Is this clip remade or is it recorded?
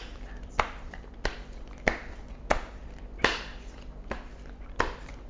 remade